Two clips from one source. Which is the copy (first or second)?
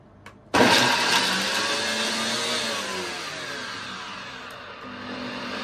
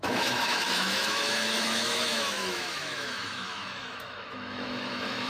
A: second